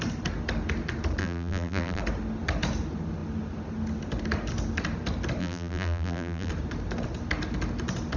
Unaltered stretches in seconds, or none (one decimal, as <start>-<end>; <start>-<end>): 0.0-1.2; 2.0-5.4; 6.5-8.2